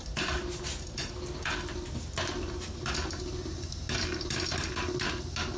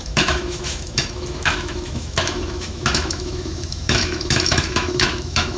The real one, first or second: first